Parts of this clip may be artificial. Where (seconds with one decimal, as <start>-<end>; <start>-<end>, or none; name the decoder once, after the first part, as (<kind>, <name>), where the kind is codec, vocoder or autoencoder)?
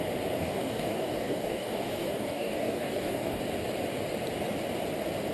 0.4-3.4 (codec, DAC)